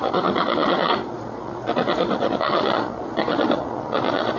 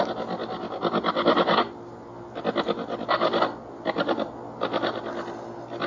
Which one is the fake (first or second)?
first